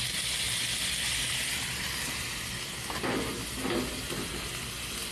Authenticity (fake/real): real